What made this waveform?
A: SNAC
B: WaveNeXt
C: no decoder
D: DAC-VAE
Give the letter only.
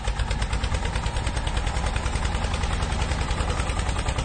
C